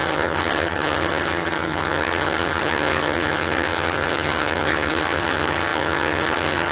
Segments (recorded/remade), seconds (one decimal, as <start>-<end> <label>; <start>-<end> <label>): 0.0-6.7 remade